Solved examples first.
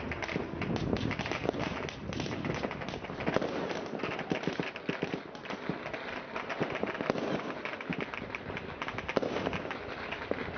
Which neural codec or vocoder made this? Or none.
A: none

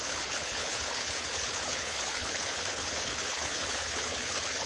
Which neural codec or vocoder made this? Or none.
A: codec, HILCodec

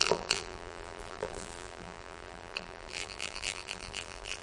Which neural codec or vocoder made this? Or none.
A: vocoder, BigVGAN v2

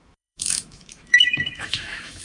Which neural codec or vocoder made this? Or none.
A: autoencoder, DAC-VAE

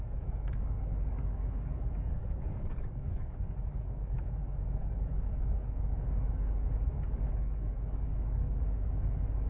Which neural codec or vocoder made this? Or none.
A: codec, DAC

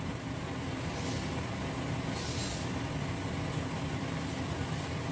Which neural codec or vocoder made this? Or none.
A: none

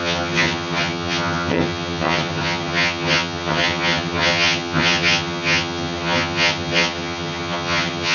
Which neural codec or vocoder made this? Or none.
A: vocoder, HiFi-GAN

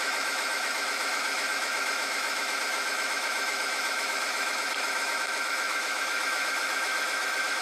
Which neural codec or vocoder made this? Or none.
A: autoencoder, DAC-VAE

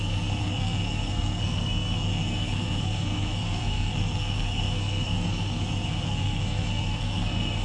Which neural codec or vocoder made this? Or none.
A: codec, SNAC